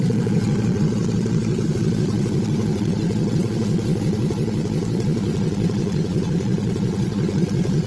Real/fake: fake